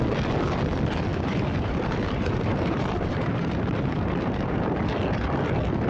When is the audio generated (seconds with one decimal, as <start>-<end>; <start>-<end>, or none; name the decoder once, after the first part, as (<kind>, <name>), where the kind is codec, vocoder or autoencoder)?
1.1-4.6 (vocoder, BigVGAN v2)